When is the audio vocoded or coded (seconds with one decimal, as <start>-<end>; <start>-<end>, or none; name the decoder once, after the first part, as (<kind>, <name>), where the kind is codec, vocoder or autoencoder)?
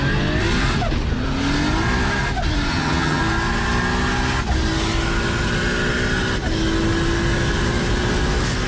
2.7-3.2 (vocoder, HiFi-GAN)